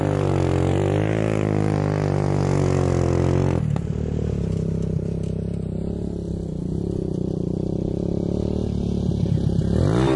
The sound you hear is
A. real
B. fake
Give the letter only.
A